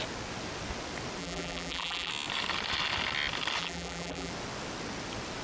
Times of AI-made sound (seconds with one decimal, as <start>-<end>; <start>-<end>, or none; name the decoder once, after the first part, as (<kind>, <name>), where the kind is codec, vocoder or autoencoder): 1.2-2.1 (vocoder, BigVGAN v2); 3.6-4.3